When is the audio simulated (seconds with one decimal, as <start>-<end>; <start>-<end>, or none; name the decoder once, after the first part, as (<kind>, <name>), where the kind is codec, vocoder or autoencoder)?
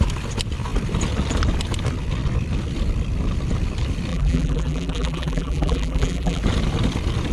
4.1-6.4 (vocoder, BigVGAN v2)